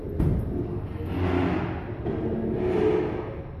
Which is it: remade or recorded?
recorded